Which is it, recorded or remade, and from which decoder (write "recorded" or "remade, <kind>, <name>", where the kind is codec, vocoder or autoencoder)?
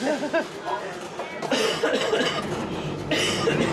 recorded